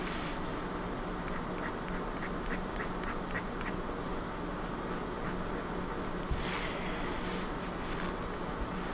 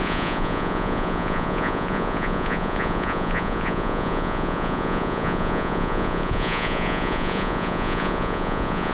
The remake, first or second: second